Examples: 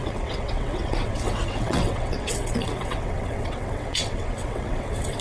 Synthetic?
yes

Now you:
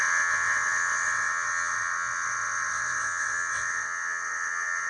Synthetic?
yes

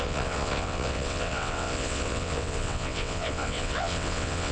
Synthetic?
yes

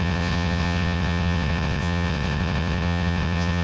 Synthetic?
yes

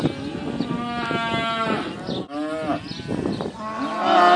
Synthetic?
no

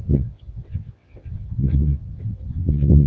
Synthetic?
yes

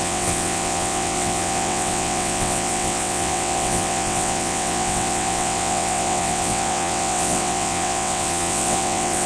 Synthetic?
yes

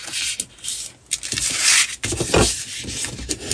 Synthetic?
no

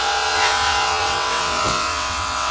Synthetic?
yes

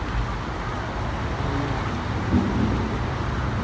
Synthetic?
no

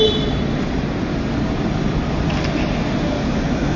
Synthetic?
no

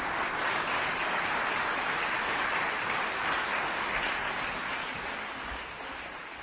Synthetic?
no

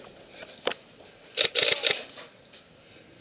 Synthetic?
no